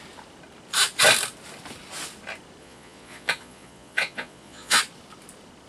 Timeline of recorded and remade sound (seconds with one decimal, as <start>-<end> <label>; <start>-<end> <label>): 0.0-2.6 recorded; 2.6-4.8 remade; 4.8-5.7 recorded